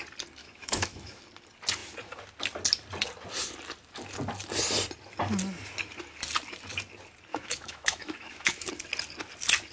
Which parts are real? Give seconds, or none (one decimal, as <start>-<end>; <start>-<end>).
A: 0.0-0.4; 1.2-7.3; 8.7-9.7